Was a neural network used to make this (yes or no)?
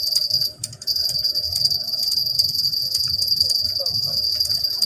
yes